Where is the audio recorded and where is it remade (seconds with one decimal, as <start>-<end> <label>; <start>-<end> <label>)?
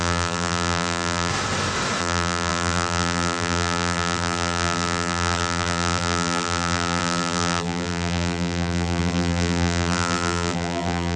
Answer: 0.0-1.3 remade; 1.3-2.0 recorded; 2.0-11.2 remade